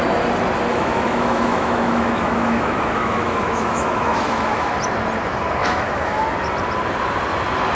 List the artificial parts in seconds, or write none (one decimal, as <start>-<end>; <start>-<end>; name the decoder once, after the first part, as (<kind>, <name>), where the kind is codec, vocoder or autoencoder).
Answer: 0.7-4.7 (autoencoder, DAC-VAE); 5.6-6.2